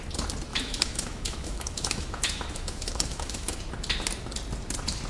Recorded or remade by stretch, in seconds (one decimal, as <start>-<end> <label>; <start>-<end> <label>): 0.0-0.5 recorded; 0.5-3.6 remade; 3.6-5.1 recorded

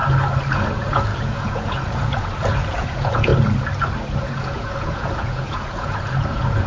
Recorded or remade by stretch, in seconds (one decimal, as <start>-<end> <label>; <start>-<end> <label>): 0.0-0.5 recorded; 0.5-3.3 remade; 3.3-4.1 recorded; 4.1-6.7 remade